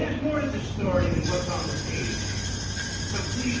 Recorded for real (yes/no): yes